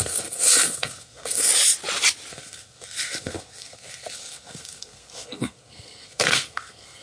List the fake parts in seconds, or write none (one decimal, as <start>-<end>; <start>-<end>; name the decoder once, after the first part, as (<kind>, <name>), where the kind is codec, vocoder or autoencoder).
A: 0.0-1.5 (codec, SNAC); 2.3-7.0